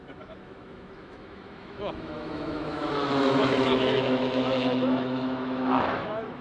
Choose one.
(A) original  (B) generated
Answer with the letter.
B